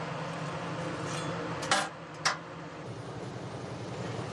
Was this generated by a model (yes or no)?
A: no